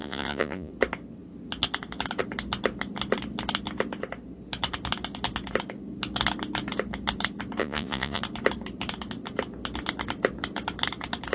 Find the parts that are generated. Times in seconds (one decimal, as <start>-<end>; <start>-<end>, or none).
0.0-0.7; 7.6-8.2